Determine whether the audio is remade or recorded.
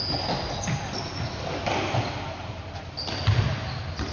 recorded